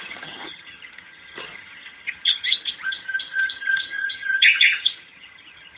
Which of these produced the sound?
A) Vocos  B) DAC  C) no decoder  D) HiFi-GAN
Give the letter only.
D